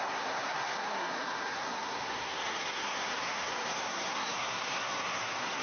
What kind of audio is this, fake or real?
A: fake